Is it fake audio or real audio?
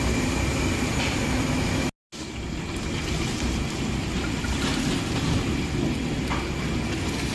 real